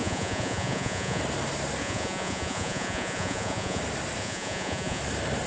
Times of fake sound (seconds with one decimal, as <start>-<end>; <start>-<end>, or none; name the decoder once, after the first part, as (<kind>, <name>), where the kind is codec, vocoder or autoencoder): 0.0-1.2 (vocoder, Vocos); 1.8-3.8; 4.2-5.0